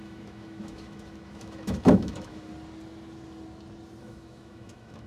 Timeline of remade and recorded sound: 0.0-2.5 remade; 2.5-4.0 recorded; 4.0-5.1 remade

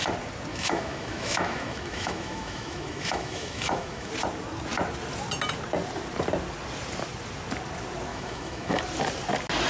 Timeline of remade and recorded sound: 0.0-0.5 recorded; 0.5-4.1 remade; 4.1-8.1 recorded; 8.1-8.8 remade; 8.8-9.7 recorded

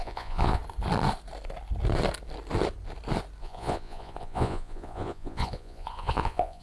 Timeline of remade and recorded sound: 0.0-0.6 remade; 0.6-3.4 recorded; 3.4-6.6 remade

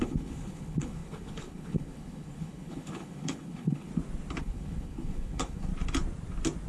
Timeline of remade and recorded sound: 0.0-3.9 remade; 3.9-4.4 recorded; 4.4-5.7 remade; 5.7-6.7 recorded

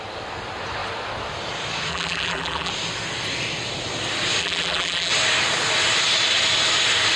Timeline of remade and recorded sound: 0.0-1.9 recorded; 1.9-2.7 remade; 2.7-4.4 recorded; 4.4-5.1 remade; 5.1-7.2 recorded

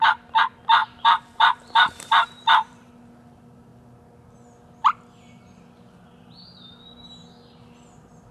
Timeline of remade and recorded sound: 0.0-0.8 recorded; 0.8-2.9 remade; 2.9-8.3 recorded

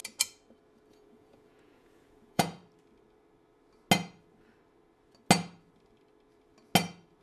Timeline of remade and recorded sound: 0.0-0.9 recorded; 0.9-2.6 remade; 2.6-7.2 recorded